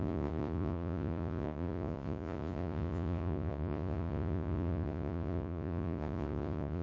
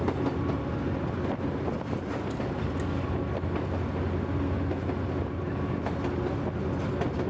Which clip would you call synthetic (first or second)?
first